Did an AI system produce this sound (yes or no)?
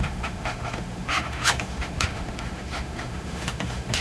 yes